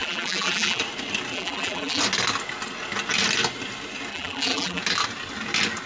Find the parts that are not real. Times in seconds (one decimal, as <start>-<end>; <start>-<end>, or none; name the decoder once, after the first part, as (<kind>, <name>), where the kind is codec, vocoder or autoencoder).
0.0-0.8 (vocoder, BigVGAN v2); 1.3-2.0; 4.1-4.8